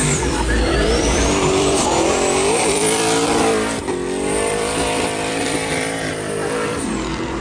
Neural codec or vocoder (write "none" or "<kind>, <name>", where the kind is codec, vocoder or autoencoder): vocoder, BigVGAN v2